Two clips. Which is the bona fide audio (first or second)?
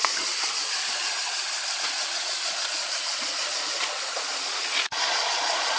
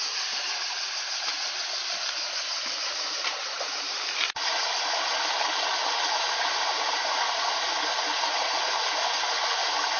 second